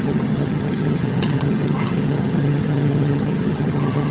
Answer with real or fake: fake